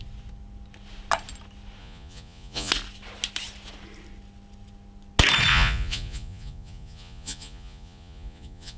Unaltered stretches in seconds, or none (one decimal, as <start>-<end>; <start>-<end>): 0.0-1.8; 2.7-5.5